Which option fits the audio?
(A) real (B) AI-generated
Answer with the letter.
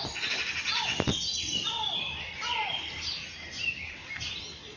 A